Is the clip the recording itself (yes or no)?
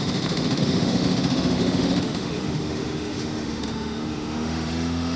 no